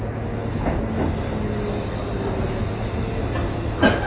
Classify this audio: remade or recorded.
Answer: recorded